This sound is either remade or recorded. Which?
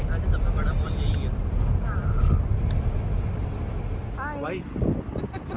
recorded